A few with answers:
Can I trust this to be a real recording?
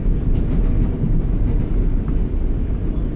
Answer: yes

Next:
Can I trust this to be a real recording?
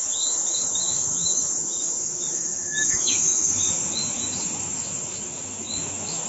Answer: no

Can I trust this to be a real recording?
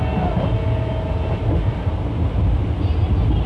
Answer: yes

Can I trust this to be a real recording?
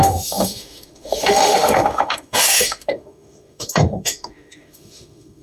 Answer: no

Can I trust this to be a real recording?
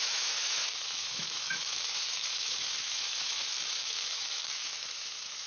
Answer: no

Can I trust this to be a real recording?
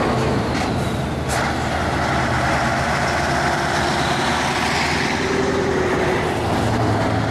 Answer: yes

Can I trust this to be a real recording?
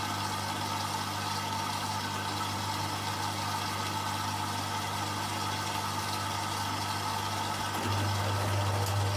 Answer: yes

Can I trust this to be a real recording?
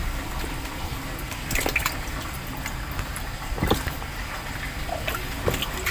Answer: yes